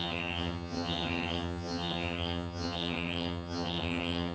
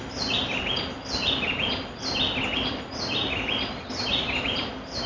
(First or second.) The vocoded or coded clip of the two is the first